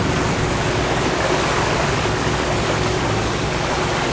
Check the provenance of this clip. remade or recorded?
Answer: remade